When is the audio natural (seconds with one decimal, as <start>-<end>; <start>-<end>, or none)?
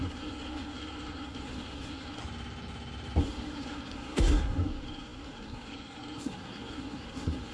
2.2-3.2